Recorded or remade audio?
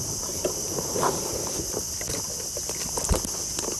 recorded